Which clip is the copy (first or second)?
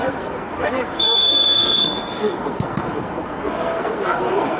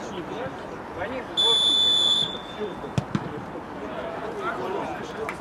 first